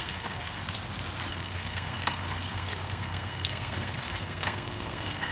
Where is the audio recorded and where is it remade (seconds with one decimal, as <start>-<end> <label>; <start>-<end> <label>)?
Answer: 0.0-0.6 remade; 0.6-1.3 recorded; 1.3-5.3 remade